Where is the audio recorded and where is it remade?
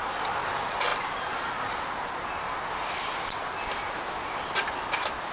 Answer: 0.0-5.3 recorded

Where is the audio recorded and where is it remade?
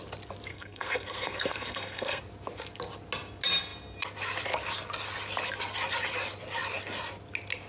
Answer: 0.0-0.5 recorded; 0.5-2.2 remade; 2.2-7.7 recorded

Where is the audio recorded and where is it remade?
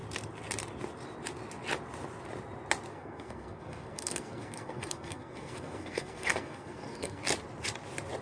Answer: 0.0-2.9 recorded; 2.9-7.2 remade; 7.2-8.2 recorded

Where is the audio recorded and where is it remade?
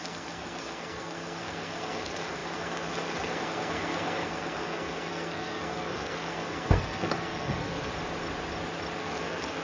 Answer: 0.0-7.9 remade; 7.9-9.0 recorded; 9.0-9.6 remade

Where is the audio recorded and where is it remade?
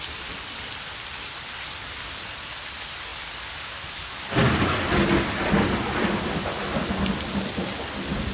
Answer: 0.0-8.3 recorded